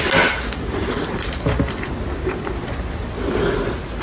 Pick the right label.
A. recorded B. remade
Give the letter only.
A